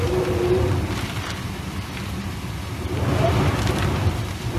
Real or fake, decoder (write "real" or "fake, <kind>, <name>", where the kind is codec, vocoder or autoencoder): real